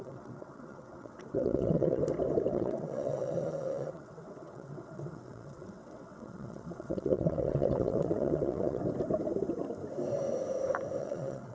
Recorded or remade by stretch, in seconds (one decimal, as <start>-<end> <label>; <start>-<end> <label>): 0.0-2.0 remade; 2.0-2.5 recorded; 2.5-8.8 remade; 8.8-11.0 recorded; 11.0-11.5 remade